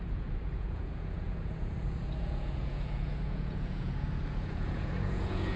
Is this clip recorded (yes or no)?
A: no